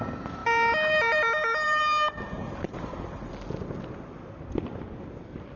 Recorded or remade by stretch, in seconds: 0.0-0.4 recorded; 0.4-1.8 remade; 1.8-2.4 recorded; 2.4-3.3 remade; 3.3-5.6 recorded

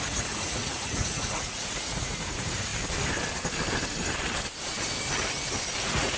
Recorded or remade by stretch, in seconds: 0.0-2.7 remade; 2.7-5.8 recorded; 5.8-6.2 remade

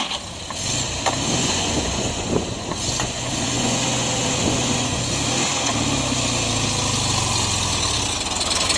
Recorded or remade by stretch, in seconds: 0.0-1.4 recorded; 1.4-5.1 remade; 5.1-8.8 recorded

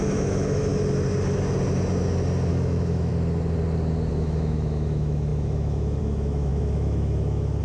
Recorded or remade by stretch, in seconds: 0.0-0.7 remade; 0.7-2.5 recorded; 2.5-3.1 remade; 3.1-4.1 recorded; 4.1-7.6 remade

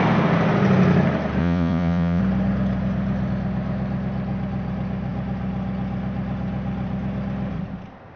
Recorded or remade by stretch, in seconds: 0.0-1.4 recorded; 1.4-2.2 remade; 2.2-8.2 recorded

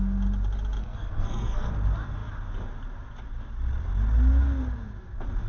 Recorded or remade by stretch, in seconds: 0.0-0.8 recorded; 0.8-1.7 remade; 1.7-5.5 recorded

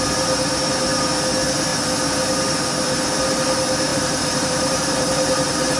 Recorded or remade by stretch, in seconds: 0.0-3.9 recorded; 3.9-5.8 remade

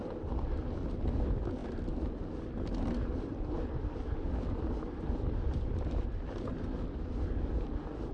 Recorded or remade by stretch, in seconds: 0.0-8.1 recorded